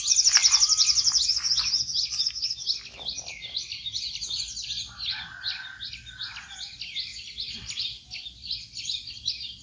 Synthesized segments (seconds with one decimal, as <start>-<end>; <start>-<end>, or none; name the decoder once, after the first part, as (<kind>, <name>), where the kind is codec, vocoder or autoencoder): 7.1-8.2 (vocoder, BigVGAN v2)